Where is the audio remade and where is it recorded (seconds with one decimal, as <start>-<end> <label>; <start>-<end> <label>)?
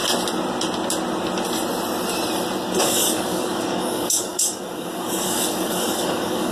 0.0-2.8 recorded; 2.8-6.5 remade